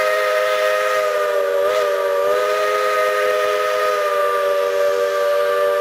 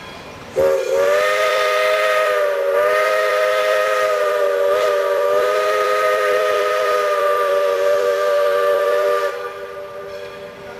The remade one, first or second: second